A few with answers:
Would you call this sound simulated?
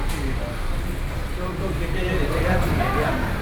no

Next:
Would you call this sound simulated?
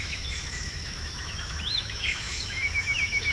yes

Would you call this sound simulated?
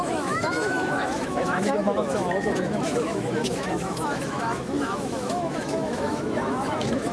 yes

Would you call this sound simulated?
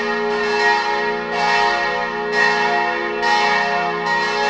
no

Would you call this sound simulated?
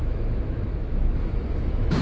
yes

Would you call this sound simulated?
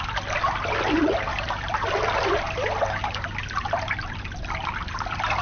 no